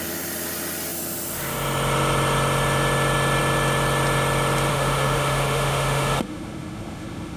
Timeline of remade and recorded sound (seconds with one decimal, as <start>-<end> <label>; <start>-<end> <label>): 0.0-4.7 recorded; 4.7-7.4 remade